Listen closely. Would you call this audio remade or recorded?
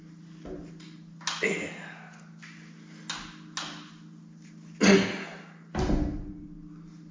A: recorded